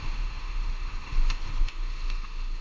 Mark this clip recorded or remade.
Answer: remade